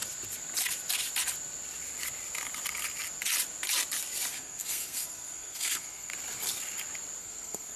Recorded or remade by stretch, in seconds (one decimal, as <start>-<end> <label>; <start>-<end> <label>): 0.0-4.3 recorded; 4.3-6.1 remade; 6.1-7.2 recorded; 7.2-7.8 remade